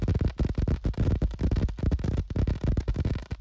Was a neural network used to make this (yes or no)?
no